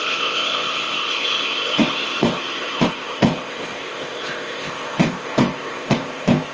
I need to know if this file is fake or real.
fake